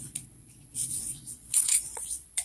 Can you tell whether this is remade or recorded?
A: remade